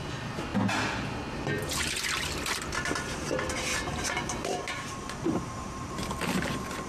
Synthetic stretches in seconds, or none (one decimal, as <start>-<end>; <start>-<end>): 3.7-6.0